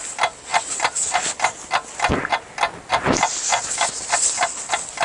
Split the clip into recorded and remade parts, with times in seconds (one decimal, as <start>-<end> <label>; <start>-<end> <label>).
0.0-5.0 recorded